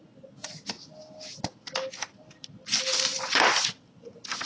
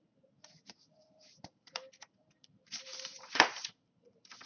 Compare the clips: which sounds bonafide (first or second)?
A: first